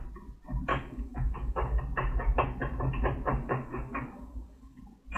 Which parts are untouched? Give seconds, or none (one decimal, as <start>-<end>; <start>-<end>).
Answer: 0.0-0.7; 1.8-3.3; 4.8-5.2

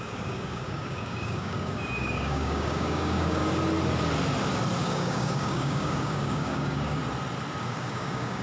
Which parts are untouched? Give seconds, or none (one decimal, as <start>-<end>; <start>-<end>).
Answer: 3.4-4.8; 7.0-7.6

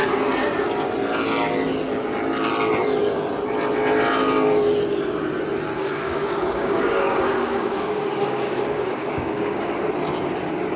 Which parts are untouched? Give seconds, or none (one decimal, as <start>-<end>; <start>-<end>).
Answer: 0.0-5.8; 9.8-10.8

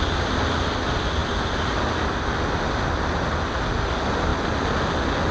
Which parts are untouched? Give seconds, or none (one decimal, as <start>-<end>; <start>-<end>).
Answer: 0.0-5.3